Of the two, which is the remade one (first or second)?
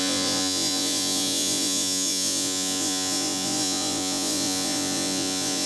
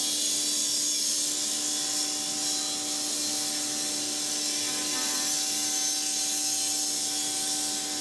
first